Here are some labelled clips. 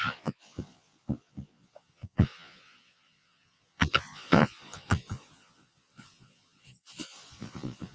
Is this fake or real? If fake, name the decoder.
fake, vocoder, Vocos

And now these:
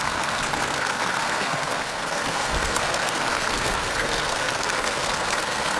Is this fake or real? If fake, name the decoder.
fake, codec, SNAC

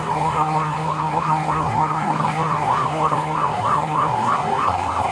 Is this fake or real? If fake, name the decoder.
fake, codec, SNAC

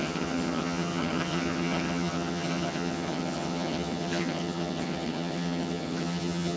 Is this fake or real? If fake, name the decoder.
fake, vocoder, HiFi-GAN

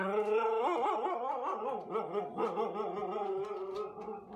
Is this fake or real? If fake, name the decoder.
real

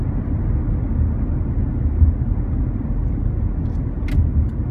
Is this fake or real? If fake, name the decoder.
real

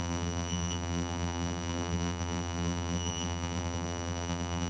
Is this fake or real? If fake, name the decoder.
fake, vocoder, BigVGAN v2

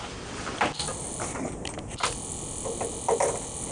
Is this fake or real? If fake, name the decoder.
real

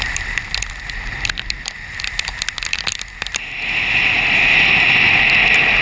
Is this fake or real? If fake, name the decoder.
real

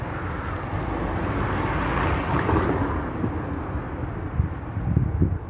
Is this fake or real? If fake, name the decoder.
real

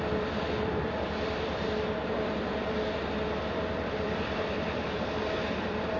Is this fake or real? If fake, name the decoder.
fake, vocoder, BigVGAN v2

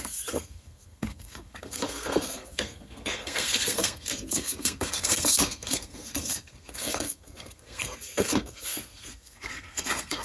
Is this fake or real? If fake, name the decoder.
fake, codec, SNAC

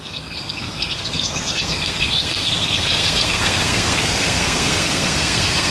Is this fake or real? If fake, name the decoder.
fake, codec, SNAC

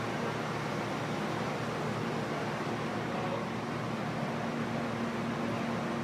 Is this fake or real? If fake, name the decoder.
real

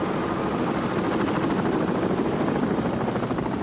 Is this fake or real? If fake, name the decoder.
real